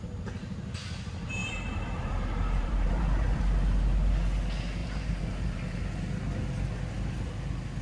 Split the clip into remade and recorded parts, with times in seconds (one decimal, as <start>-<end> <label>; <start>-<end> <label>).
0.0-1.4 recorded; 1.4-3.4 remade; 3.4-4.8 recorded; 4.8-5.8 remade; 5.8-7.8 recorded